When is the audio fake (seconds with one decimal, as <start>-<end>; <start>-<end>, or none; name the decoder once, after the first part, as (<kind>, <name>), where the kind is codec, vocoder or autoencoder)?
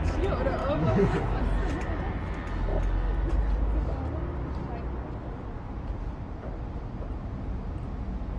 0.6-1.4 (codec, DAC)